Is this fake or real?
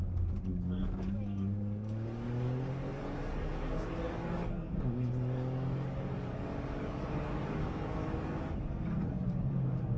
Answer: fake